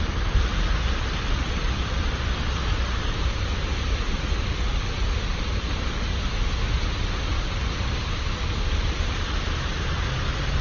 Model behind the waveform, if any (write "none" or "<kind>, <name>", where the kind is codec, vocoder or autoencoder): none